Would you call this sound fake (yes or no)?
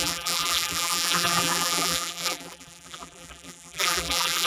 yes